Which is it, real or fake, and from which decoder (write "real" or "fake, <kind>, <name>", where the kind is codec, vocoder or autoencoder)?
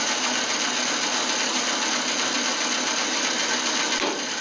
real